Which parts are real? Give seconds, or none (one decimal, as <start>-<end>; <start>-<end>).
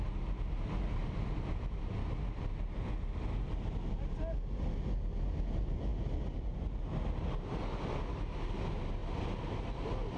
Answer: 0.0-1.0; 2.2-5.9; 6.8-10.2